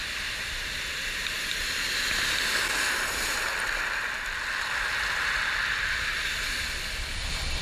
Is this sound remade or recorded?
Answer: recorded